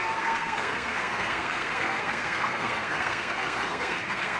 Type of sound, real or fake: fake